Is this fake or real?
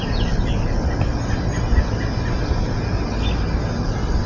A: real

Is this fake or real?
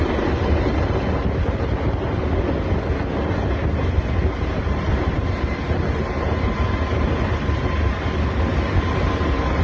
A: real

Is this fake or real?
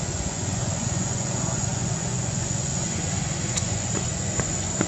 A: fake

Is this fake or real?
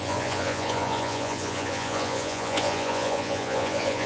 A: fake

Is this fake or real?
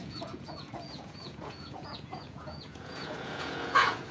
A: fake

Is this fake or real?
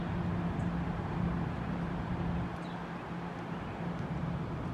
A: real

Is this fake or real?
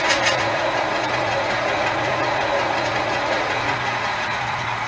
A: fake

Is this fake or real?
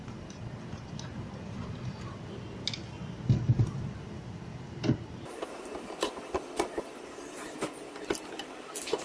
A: real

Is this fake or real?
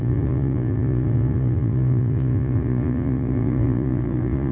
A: fake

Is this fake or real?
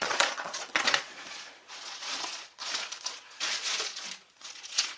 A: fake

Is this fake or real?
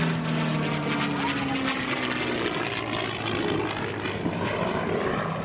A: real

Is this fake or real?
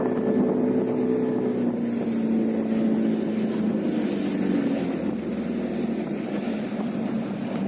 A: real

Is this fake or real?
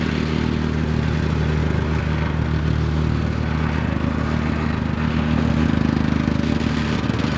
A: real